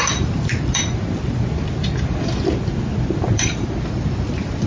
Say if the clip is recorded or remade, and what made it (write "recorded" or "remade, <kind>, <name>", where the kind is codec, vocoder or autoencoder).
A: recorded